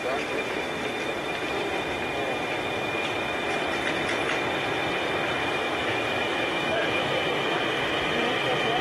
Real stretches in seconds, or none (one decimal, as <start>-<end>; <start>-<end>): 0.0-5.4; 7.1-8.8